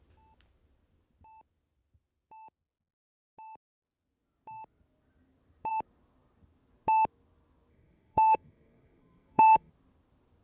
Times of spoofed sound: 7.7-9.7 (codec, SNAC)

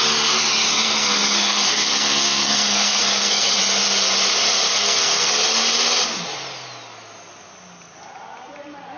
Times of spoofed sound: 0.7-3.6 (codec, SNAC); 4.7-5.3

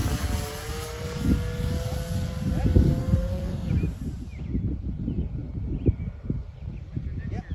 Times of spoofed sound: 3.0-3.7 (codec, SNAC)

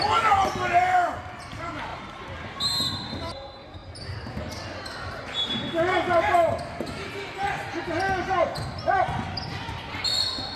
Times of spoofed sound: none

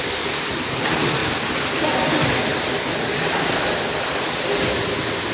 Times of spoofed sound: none